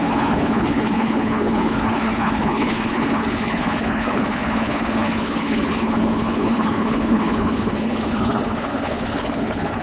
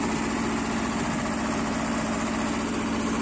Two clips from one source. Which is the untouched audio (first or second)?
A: second